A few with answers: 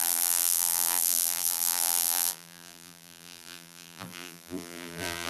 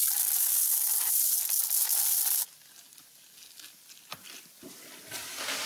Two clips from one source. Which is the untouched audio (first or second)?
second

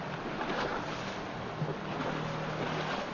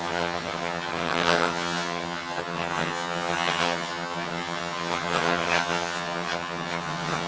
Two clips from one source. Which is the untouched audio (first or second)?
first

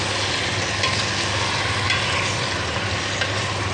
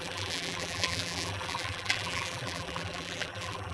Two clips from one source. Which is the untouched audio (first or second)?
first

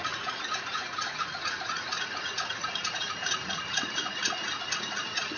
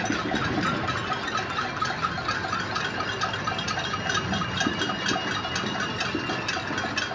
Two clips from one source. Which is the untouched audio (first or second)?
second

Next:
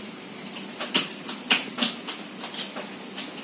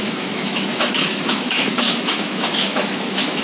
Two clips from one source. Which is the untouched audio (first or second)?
first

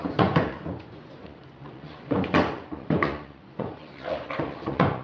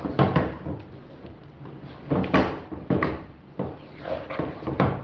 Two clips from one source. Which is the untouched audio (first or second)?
second